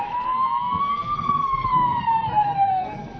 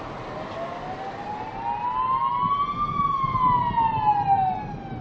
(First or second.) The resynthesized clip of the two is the first